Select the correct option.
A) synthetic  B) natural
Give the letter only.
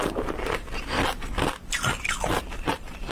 B